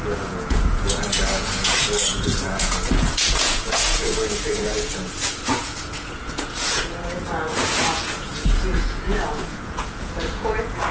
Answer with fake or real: fake